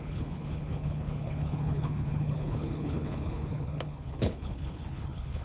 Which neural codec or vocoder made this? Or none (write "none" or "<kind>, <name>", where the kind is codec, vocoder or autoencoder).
codec, HILCodec